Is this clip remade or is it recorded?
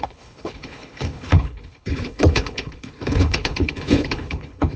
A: remade